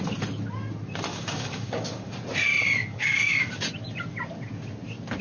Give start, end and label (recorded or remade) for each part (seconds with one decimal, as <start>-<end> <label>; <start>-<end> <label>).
0.0-1.1 recorded; 1.1-2.2 remade; 2.2-2.8 recorded; 2.8-3.5 remade; 3.5-5.2 recorded